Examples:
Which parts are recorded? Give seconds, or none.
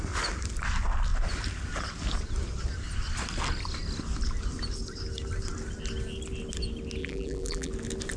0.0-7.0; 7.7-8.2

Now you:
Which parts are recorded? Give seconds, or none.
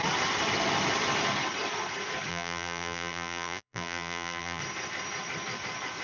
0.0-2.3; 4.6-6.0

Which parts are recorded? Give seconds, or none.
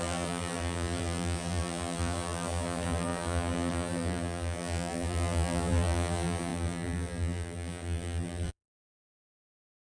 none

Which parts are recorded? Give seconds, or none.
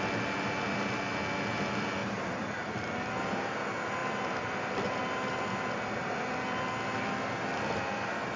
0.0-2.0; 2.8-4.0; 6.6-8.4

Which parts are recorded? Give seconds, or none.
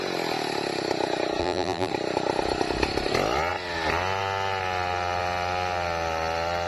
0.0-1.4; 1.9-6.7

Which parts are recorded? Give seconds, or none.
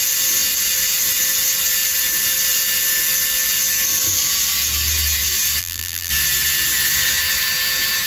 0.0-5.6; 6.1-8.1